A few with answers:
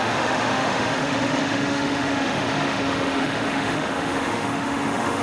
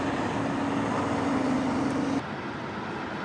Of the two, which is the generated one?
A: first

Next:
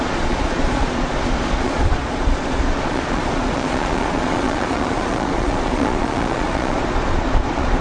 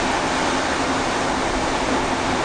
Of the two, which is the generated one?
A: first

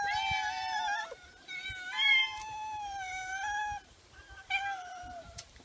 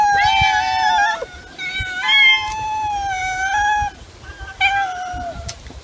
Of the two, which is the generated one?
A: first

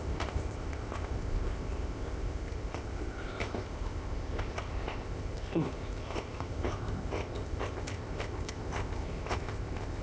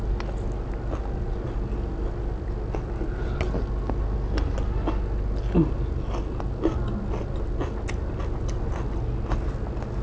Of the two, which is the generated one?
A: first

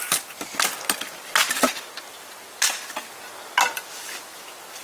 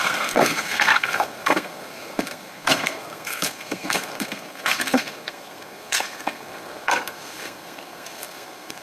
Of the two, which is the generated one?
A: second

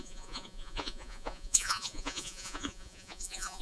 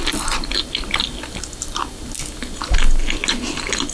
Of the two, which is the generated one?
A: first